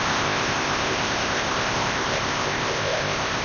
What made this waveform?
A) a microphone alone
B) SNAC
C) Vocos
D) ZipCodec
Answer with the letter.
D